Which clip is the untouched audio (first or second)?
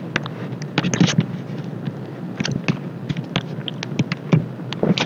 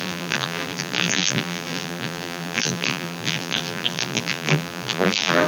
first